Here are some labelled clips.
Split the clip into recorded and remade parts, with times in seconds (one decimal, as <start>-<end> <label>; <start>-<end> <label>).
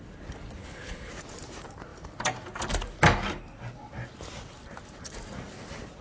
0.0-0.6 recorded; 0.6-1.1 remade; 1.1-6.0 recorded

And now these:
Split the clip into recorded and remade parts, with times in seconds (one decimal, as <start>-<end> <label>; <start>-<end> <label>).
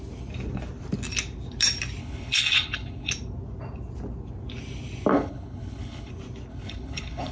0.0-2.0 recorded; 2.0-3.1 remade; 3.1-5.1 recorded; 5.1-6.1 remade; 6.1-6.5 recorded; 6.5-7.3 remade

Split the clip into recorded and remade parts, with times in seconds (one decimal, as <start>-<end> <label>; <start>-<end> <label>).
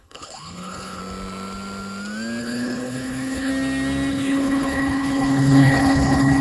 0.0-1.0 remade; 1.0-2.4 recorded; 2.4-3.5 remade; 3.5-4.1 recorded; 4.1-6.4 remade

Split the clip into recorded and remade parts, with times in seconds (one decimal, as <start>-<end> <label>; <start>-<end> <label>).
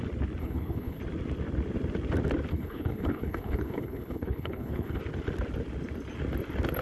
0.0-0.4 recorded; 0.4-1.0 remade; 1.0-2.5 recorded; 2.5-5.0 remade; 5.0-6.8 recorded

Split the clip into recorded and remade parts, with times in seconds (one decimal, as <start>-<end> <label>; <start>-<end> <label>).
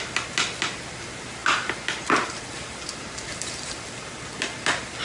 0.0-5.0 recorded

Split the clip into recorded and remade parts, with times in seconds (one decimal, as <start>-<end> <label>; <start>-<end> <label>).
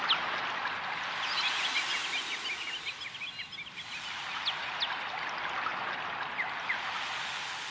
0.0-7.7 recorded